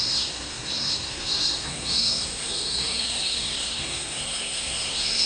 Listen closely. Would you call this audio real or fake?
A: fake